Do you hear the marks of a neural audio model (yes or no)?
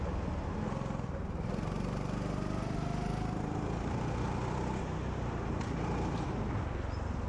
no